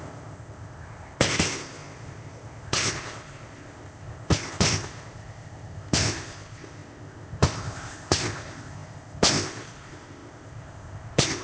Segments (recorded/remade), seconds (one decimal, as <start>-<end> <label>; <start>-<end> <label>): 0.0-11.4 remade